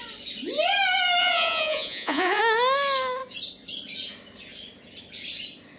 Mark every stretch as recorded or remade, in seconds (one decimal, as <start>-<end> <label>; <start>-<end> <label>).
0.0-1.2 recorded; 1.2-2.4 remade; 2.4-5.8 recorded